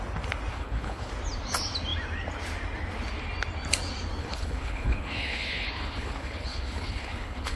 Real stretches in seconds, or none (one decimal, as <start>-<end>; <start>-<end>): 0.0-0.5; 1.1-4.2